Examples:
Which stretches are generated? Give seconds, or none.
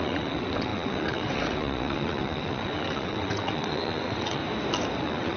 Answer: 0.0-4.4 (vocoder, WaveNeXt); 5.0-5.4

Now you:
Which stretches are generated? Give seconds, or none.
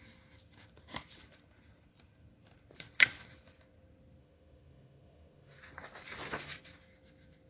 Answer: 4.2-5.6 (autoencoder, DAC-VAE)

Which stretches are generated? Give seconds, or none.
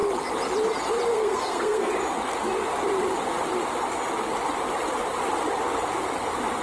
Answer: 1.1-1.9 (codec, SNAC)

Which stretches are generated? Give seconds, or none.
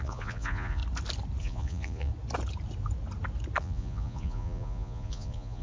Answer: 0.0-0.8 (vocoder, Vocos); 1.4-2.1; 3.6-5.6